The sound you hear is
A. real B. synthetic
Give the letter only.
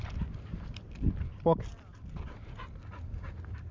A